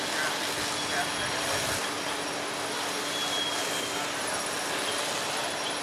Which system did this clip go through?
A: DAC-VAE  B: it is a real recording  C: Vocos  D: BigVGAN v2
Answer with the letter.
B